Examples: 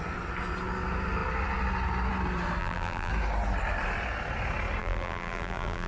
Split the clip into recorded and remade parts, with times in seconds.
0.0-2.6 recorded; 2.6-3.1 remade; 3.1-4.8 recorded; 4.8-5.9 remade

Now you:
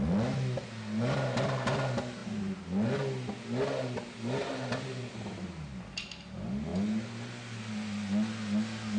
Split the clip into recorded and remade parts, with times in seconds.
0.0-9.0 recorded

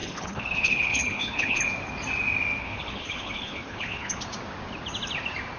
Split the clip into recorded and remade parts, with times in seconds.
0.0-1.6 remade; 1.6-2.6 recorded; 2.6-4.2 remade; 4.2-5.6 recorded

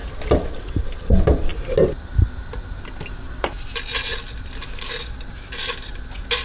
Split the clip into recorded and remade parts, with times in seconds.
0.0-6.4 recorded

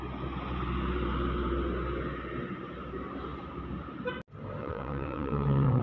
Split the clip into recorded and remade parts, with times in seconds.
0.0-4.6 recorded; 4.6-5.8 remade

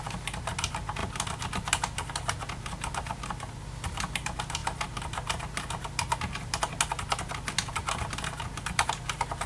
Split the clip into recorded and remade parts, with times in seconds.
0.0-9.5 recorded

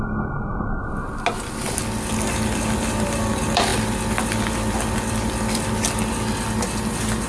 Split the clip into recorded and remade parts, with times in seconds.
0.0-7.3 recorded

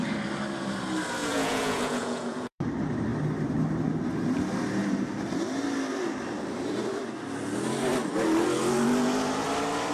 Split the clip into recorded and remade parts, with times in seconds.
0.0-1.2 recorded; 1.2-2.6 remade; 2.6-9.9 recorded